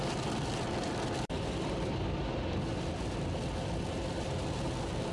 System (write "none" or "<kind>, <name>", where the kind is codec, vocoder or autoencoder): none